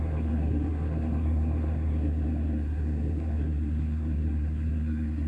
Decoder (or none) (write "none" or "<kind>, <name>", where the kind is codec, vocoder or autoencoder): codec, SNAC